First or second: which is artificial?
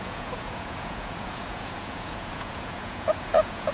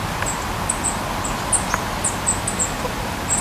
first